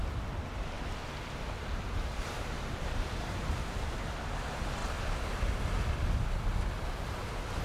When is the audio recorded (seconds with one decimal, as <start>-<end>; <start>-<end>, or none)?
0.0-1.6; 4.8-7.6